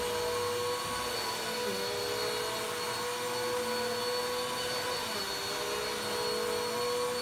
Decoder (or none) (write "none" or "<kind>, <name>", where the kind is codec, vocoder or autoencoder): none